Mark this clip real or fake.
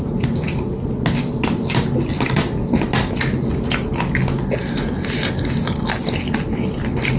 real